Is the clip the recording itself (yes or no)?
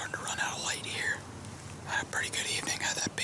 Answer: yes